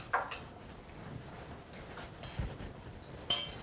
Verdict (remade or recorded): recorded